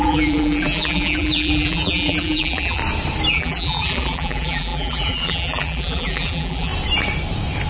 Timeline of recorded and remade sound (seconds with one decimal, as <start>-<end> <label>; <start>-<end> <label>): 0.0-2.8 remade; 2.8-3.3 recorded; 3.3-6.7 remade; 6.7-7.7 recorded